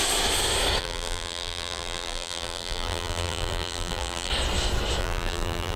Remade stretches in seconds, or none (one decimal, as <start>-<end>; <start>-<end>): 0.8-4.3; 5.0-5.8